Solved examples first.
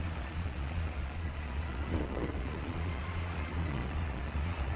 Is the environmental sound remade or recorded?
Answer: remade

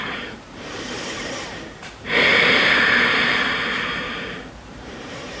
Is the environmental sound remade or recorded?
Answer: remade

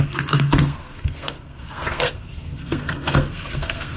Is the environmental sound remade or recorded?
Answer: remade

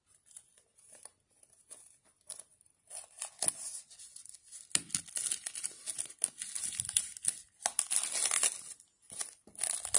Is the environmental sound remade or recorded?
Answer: recorded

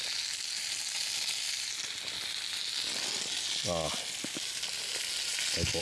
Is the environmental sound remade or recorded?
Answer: recorded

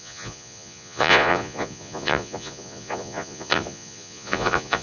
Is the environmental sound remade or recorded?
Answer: remade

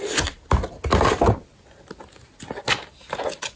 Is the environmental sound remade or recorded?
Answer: recorded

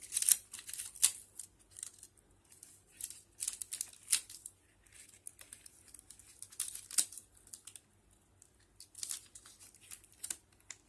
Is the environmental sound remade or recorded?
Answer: recorded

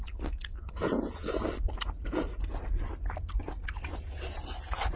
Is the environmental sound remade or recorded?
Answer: recorded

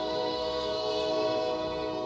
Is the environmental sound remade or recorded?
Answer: remade